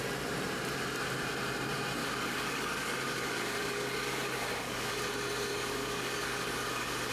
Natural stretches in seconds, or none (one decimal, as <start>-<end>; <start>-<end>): 0.0-2.0; 4.9-5.5